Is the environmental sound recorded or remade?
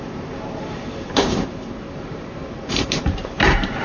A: remade